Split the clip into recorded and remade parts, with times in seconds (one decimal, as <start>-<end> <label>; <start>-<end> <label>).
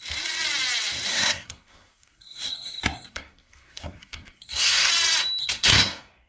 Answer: 0.0-1.1 recorded; 1.1-4.9 remade; 4.9-5.4 recorded; 5.4-6.3 remade